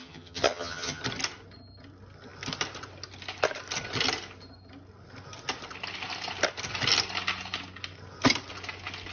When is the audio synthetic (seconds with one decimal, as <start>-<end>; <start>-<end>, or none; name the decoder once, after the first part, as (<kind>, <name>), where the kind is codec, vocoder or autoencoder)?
0.0-1.0 (vocoder, HiFi-GAN)

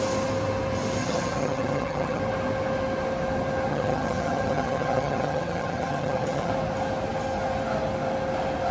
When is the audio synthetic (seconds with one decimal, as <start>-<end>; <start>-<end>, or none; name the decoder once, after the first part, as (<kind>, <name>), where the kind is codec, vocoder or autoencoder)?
1.0-2.2 (vocoder, HiFi-GAN); 3.7-6.5